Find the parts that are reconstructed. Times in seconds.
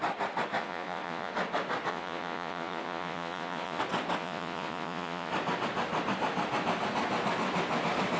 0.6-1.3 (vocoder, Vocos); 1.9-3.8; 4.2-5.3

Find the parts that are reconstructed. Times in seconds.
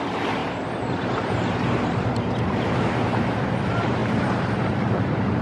0.0-5.4 (vocoder, BigVGAN v2)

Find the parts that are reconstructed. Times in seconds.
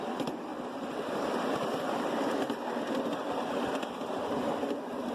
none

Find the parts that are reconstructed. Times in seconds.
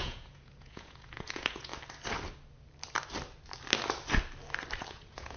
0.0-1.7 (vocoder, Vocos); 4.9-5.4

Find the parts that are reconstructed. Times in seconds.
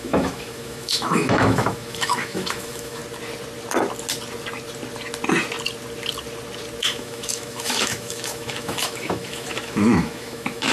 0.0-3.0 (autoencoder, DAC-VAE); 6.8-10.7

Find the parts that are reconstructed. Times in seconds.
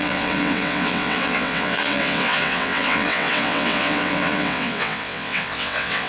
0.0-6.1 (vocoder, WaveNeXt)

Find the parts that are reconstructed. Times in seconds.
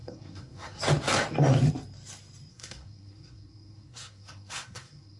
0.0-0.8 (codec, SNAC); 2.5-5.2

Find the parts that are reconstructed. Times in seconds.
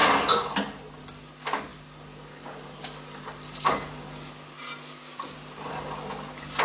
none